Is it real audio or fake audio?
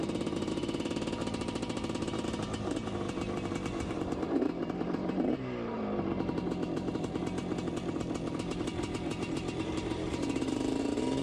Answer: fake